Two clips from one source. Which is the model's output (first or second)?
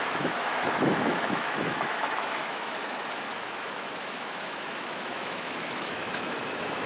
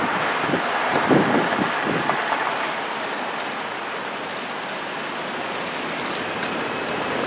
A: first